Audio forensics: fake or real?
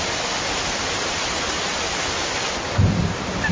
real